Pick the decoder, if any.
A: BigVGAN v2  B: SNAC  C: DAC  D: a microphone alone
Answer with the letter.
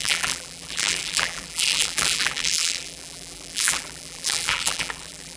A